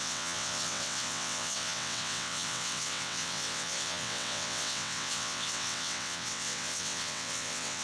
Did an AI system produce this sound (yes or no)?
yes